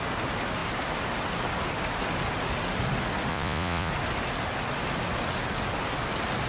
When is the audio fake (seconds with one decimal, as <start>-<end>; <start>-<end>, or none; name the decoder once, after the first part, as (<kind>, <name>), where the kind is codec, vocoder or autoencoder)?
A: 3.3-3.9 (vocoder, Vocos)